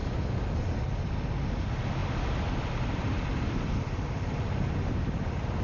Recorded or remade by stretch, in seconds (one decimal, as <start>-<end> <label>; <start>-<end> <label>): 0.0-5.6 recorded